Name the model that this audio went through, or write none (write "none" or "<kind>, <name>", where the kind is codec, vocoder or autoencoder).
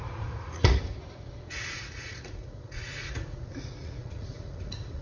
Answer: vocoder, Vocos